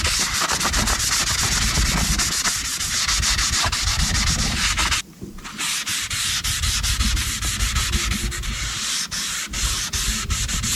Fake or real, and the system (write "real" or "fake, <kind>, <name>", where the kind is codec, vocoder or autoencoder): real